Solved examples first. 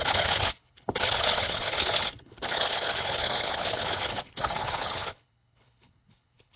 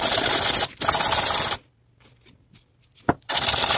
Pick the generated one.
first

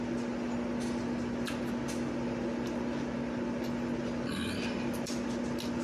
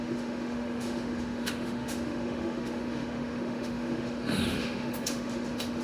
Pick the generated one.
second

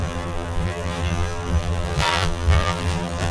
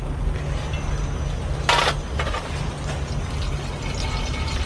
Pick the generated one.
first